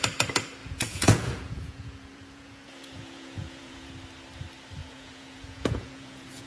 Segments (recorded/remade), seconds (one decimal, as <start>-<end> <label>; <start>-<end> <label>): 0.0-0.6 recorded; 0.6-3.9 remade; 3.9-4.8 recorded; 4.8-6.5 remade